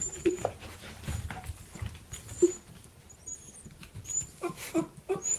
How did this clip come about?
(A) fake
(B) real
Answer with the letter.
A